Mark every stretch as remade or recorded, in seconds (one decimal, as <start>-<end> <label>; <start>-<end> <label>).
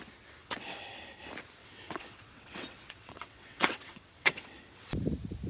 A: 0.0-0.4 recorded; 0.4-1.0 remade; 1.0-1.6 recorded; 1.6-4.9 remade; 4.9-5.5 recorded